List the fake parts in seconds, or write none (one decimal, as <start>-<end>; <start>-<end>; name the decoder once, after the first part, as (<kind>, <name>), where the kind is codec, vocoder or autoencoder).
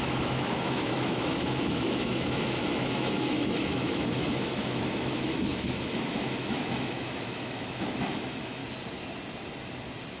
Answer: 0.0-8.6 (autoencoder, DAC-VAE)